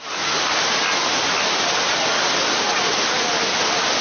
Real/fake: real